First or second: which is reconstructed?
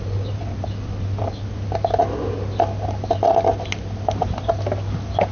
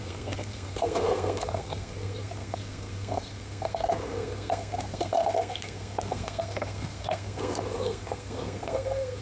second